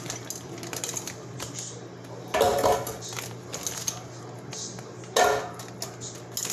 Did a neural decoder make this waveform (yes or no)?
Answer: no